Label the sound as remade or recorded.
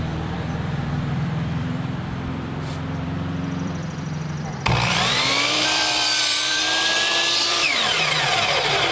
remade